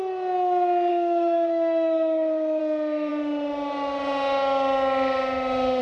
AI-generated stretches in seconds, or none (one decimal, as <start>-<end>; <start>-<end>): 0.9-2.6